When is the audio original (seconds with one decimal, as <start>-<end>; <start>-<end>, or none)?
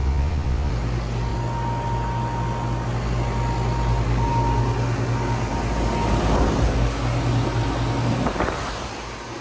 0.7-9.4